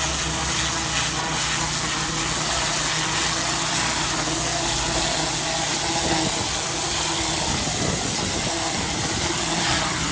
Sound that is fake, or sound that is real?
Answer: real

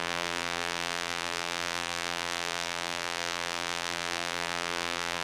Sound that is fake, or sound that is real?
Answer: fake